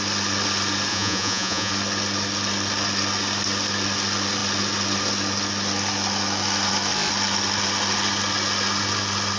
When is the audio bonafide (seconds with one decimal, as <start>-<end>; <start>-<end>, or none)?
0.0-0.9; 1.7-9.4